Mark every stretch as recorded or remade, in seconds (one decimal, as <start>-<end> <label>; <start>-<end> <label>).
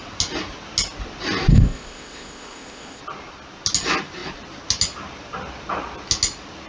0.0-1.5 recorded; 1.5-3.0 remade; 3.0-6.7 recorded